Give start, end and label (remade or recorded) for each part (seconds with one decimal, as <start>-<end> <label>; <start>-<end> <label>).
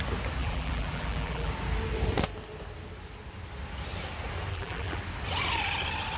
0.0-0.4 recorded; 0.4-1.5 remade; 1.5-4.5 recorded; 4.5-5.0 remade; 5.0-6.2 recorded